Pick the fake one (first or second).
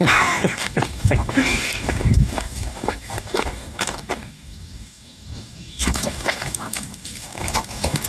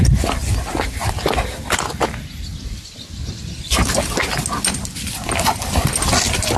first